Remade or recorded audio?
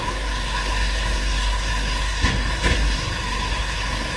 remade